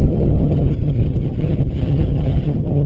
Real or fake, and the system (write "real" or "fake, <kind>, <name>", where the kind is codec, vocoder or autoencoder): fake, vocoder, HiFi-GAN